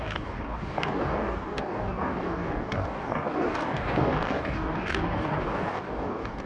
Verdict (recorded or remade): remade